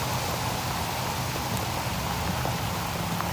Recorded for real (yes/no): yes